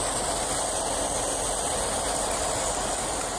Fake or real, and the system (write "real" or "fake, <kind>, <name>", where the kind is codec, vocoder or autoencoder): real